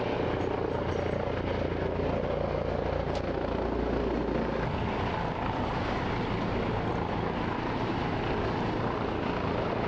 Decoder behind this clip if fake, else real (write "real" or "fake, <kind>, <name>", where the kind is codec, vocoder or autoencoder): real